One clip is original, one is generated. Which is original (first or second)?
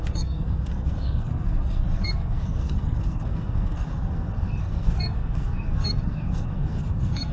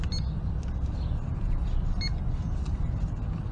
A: second